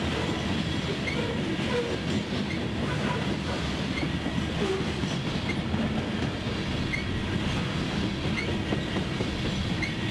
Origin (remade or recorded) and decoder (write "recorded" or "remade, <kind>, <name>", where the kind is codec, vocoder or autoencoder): recorded